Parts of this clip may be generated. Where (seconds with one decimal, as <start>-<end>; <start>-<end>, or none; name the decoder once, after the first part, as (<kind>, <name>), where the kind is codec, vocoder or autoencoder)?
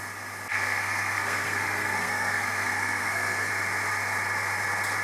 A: 0.5-3.5 (codec, SNAC)